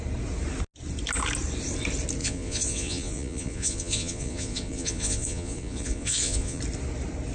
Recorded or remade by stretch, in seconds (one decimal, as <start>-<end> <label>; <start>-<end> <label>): 0.0-2.2 recorded; 2.2-6.6 remade; 6.6-7.3 recorded